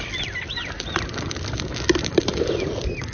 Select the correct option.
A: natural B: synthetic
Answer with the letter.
A